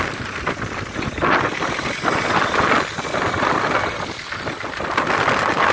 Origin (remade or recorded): recorded